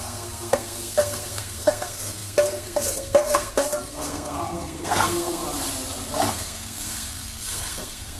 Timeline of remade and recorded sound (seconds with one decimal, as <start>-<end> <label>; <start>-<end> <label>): 0.0-5.4 remade; 5.4-6.3 recorded; 6.3-8.2 remade